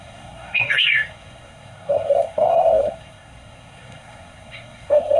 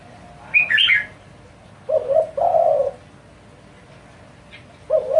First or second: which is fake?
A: first